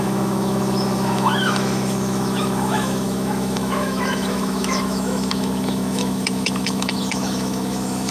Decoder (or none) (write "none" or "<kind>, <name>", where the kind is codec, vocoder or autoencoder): autoencoder, DAC-VAE